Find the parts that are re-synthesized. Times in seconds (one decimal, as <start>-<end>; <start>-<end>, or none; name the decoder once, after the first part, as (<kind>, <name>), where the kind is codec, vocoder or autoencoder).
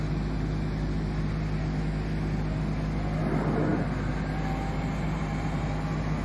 none